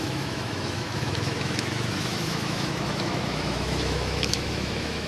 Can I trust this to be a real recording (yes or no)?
no